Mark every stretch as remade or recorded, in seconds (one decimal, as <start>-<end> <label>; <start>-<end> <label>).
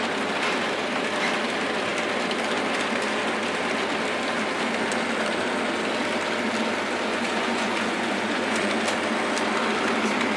0.0-7.1 recorded; 7.1-8.7 remade; 8.7-10.4 recorded